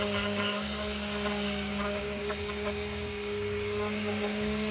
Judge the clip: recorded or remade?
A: remade